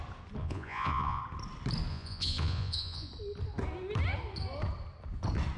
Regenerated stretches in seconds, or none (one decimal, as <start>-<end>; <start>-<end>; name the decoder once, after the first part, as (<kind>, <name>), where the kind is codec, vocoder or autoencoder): 0.4-1.2 (vocoder, Vocos); 1.9-3.1